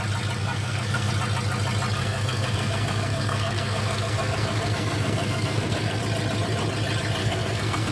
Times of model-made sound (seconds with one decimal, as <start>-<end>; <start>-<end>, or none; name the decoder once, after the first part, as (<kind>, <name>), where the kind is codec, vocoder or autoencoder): 0.4-1.1 (codec, SNAC); 2.0-6.0; 7.2-7.9